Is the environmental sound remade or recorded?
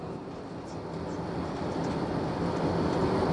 recorded